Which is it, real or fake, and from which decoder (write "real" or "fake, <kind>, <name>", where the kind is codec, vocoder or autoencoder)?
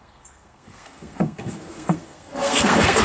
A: fake, codec, SNAC